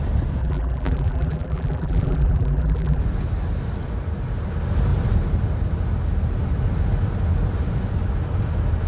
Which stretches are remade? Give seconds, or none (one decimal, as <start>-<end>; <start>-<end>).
0.4-3.0